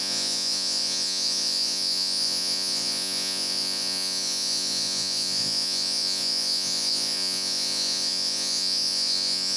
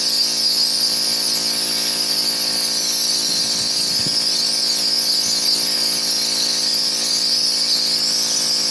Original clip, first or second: second